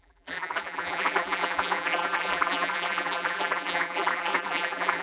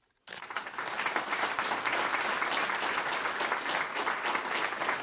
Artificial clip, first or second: first